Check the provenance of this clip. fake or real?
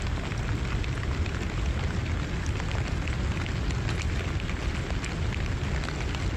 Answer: real